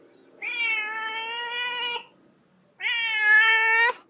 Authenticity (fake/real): real